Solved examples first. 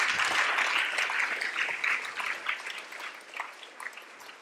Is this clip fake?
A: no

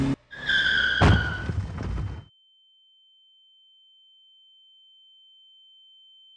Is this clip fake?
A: no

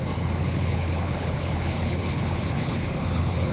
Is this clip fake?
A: yes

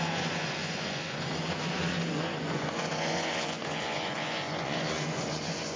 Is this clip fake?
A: yes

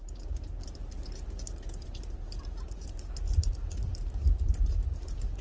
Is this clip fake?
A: yes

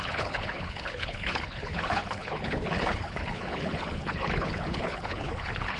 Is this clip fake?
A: yes